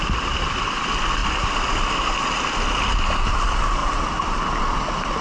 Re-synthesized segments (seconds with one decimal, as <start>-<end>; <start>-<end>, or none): 1.2-2.0